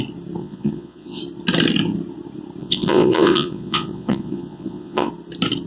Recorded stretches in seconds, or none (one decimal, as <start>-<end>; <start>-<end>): 0.0-0.4; 1.2-2.6; 5.1-5.7